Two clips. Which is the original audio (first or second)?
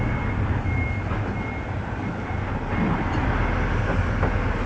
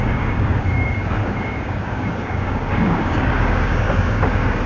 first